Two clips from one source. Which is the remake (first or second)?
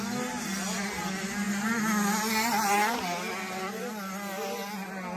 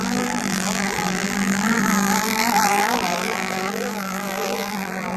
second